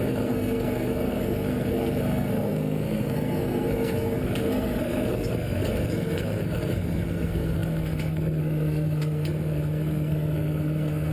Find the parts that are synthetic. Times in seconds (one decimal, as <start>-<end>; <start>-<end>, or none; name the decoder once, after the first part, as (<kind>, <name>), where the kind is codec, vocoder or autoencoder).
0.0-11.1 (codec, SNAC)

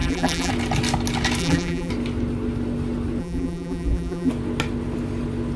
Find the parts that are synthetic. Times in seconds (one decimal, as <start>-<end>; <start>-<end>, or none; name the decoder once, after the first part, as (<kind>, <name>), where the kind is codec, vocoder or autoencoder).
0.0-0.5 (vocoder, BigVGAN v2); 1.4-1.9; 3.2-4.3

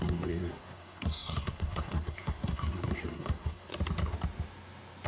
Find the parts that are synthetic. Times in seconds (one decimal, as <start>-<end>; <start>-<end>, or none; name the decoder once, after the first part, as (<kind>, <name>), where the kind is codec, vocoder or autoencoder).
0.0-3.7 (codec, SNAC)

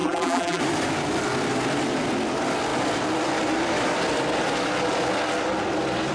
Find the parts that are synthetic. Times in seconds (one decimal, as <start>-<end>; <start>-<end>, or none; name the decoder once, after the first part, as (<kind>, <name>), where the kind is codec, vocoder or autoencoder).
0.0-0.6 (vocoder, BigVGAN v2)

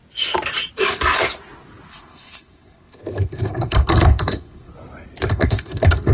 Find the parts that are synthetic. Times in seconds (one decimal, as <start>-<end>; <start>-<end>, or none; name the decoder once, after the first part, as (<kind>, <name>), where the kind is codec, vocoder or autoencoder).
1.9-4.7 (codec, SNAC); 5.3-6.1

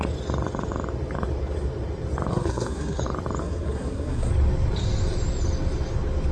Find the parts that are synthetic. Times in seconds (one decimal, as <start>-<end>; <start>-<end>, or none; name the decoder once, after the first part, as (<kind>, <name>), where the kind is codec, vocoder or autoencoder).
2.3-3.0 (codec, SNAC); 3.4-4.3